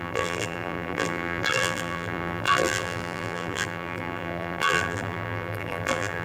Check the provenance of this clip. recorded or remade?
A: remade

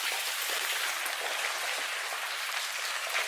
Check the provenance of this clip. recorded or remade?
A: recorded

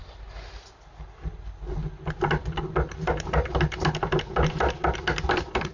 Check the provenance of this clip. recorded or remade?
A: recorded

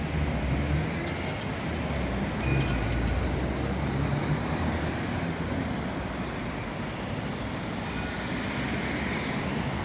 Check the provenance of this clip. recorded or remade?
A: recorded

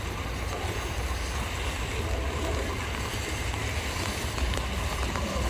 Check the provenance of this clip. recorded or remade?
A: recorded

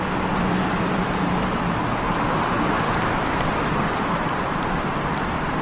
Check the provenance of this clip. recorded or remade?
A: remade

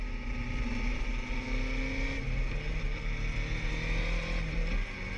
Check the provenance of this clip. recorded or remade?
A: recorded